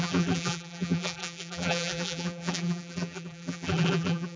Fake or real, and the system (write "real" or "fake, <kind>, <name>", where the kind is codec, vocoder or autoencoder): fake, vocoder, BigVGAN v2